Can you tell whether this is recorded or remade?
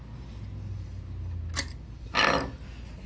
recorded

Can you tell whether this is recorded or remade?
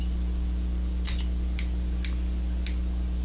recorded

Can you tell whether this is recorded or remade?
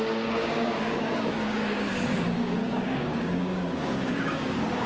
remade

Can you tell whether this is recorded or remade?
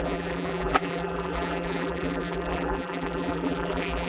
remade